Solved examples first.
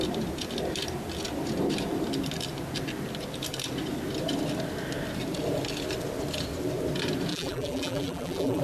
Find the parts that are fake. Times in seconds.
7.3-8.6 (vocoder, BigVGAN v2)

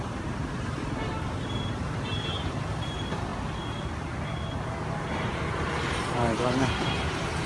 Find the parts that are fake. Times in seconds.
0.0-3.3 (vocoder, BigVGAN v2); 6.0-7.5

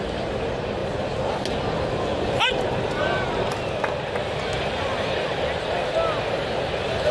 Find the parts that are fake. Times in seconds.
0.0-0.8 (vocoder, BigVGAN v2); 2.3-7.1

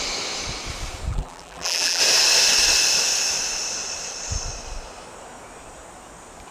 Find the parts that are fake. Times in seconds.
1.1-2.0 (vocoder, BigVGAN v2)

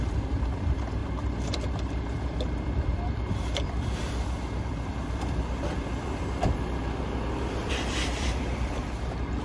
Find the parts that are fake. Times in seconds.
1.0-6.2 (vocoder, BigVGAN v2); 7.6-8.8

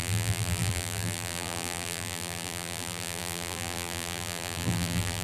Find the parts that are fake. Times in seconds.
0.0-5.2 (vocoder, BigVGAN v2)